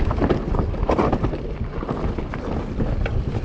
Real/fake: real